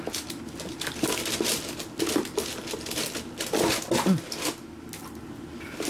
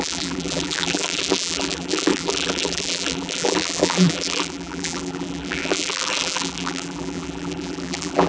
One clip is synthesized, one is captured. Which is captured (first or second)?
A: first